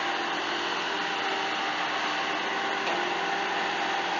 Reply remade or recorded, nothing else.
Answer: recorded